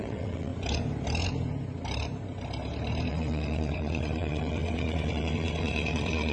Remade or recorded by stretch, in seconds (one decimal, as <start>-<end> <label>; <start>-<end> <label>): 0.0-0.5 remade; 0.5-3.1 recorded; 3.1-6.3 remade